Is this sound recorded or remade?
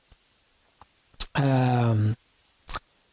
recorded